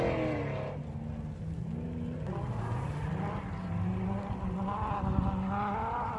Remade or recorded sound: recorded